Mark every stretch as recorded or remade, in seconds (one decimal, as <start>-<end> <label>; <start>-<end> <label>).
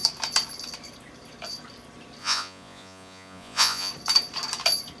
0.0-2.2 recorded; 2.2-3.9 remade; 3.9-5.0 recorded